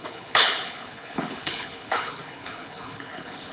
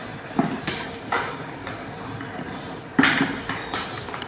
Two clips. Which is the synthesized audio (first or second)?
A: first